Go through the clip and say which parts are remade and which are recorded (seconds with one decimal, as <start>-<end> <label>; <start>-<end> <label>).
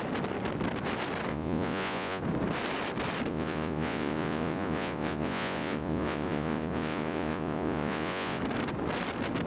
0.0-1.3 recorded; 1.3-2.2 remade; 2.2-3.3 recorded; 3.3-8.4 remade; 8.4-9.5 recorded